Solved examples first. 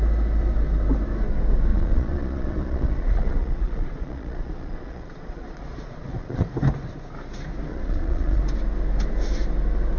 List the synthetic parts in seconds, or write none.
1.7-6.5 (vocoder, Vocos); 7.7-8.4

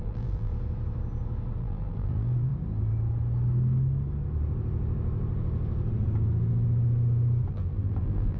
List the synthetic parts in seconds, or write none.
0.0-0.5 (vocoder, BigVGAN v2); 1.6-2.5; 7.5-8.4

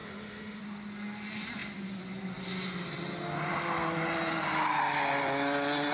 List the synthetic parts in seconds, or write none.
0.0-0.6 (autoencoder, DAC-VAE)

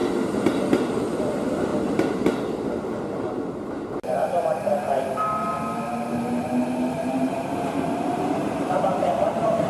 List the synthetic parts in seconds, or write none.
1.2-1.7 (vocoder, BigVGAN v2); 6.9-9.7

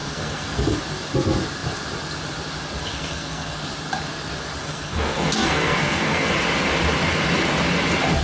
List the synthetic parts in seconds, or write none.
0.0-0.8 (codec, SNAC); 2.8-3.6; 4.6-6.3

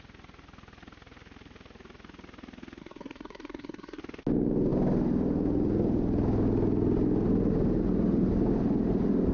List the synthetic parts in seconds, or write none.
2.8-4.0 (codec, SNAC)

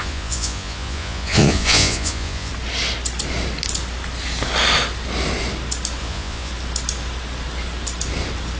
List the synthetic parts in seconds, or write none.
0.0-2.5 (vocoder, Vocos); 6.0-6.5